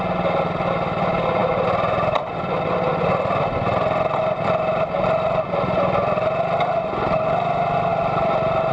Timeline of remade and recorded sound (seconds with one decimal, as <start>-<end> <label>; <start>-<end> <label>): 0.0-7.9 recorded; 7.9-8.7 remade

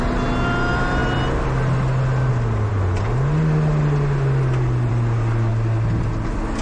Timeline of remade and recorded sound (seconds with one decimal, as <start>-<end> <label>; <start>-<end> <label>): 0.0-6.6 recorded

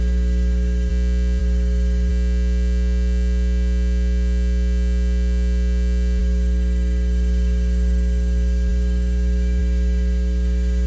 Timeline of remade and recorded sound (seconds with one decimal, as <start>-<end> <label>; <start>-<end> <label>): 0.0-0.9 remade; 0.9-1.4 recorded; 1.4-2.1 remade; 2.1-6.2 recorded; 6.2-10.9 remade

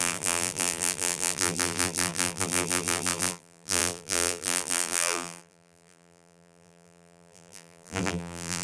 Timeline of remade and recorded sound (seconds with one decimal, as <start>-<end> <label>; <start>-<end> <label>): 0.0-8.6 remade

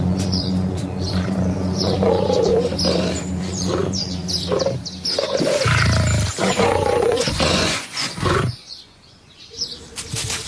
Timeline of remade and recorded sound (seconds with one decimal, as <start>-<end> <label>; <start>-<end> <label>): 0.0-2.5 remade; 2.5-3.4 recorded; 3.4-4.2 remade; 4.2-6.4 recorded; 6.4-9.7 remade; 9.7-10.5 recorded